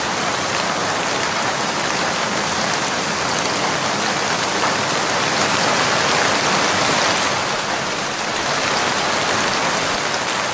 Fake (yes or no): no